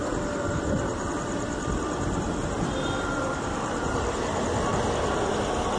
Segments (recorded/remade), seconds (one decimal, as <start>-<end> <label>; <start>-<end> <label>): 0.0-0.9 recorded; 0.9-4.4 remade; 4.4-5.8 recorded